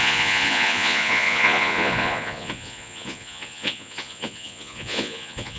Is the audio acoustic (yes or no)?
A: no